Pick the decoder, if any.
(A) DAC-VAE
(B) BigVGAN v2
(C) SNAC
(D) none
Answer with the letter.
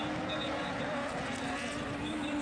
D